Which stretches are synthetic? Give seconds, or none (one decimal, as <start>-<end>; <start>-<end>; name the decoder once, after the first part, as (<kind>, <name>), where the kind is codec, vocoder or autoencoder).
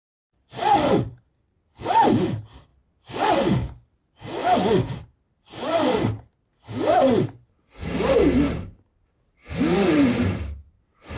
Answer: none